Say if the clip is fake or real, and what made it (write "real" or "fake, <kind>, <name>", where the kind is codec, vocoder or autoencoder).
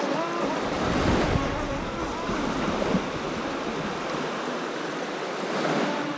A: real